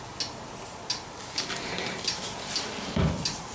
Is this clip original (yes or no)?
yes